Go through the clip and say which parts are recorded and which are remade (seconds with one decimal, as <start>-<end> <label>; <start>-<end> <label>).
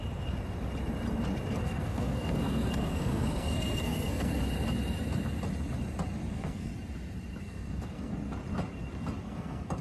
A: 0.0-1.5 recorded; 1.5-4.3 remade; 4.3-6.3 recorded; 6.3-6.7 remade; 6.7-7.4 recorded; 7.4-8.1 remade; 8.1-9.2 recorded; 9.2-9.8 remade